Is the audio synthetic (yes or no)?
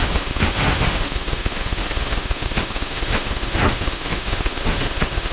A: yes